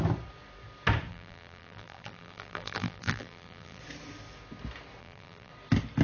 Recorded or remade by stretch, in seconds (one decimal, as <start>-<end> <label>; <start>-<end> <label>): 0.0-1.1 recorded; 1.1-3.8 remade; 3.8-5.0 recorded; 5.0-5.5 remade; 5.5-6.0 recorded